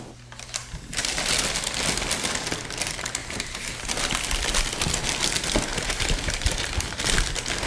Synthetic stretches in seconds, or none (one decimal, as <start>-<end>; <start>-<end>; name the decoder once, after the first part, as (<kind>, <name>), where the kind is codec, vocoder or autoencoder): 0.6-1.2 (vocoder, BigVGAN v2); 3.2-3.7; 5.7-7.0